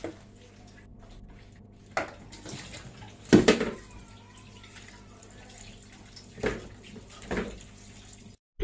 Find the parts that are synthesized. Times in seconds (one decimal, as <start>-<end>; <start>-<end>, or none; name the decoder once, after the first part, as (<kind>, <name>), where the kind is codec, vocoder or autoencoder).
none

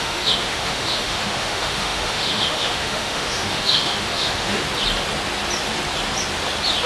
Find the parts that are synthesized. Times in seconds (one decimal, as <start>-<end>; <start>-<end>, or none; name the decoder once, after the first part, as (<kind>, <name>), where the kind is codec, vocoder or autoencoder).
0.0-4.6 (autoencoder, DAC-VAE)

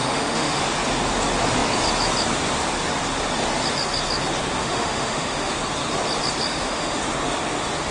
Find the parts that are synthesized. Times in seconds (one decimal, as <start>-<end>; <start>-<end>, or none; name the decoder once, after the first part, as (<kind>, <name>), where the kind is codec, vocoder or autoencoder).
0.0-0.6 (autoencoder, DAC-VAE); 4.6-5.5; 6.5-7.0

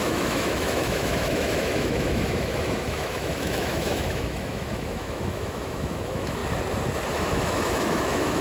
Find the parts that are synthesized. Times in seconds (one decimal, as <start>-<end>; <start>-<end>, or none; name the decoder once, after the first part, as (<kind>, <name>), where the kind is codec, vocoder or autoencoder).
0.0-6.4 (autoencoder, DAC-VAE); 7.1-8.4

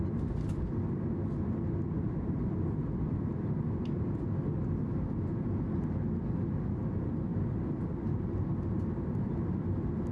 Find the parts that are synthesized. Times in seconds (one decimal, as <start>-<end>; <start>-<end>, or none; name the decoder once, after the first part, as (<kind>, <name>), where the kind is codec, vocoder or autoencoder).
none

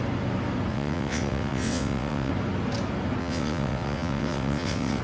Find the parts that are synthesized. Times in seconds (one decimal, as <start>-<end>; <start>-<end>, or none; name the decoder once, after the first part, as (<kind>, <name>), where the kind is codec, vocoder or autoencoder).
0.7-2.3 (vocoder, WaveNeXt); 3.2-5.0

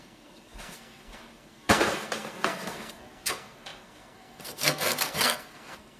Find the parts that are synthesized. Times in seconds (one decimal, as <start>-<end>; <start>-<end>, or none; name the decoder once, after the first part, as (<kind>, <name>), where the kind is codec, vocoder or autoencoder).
0.0-6.0 (codec, SNAC)